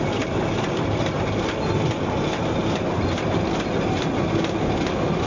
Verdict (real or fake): real